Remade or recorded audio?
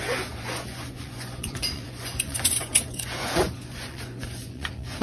remade